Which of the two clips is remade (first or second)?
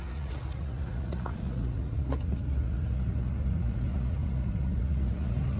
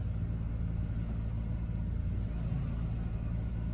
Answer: first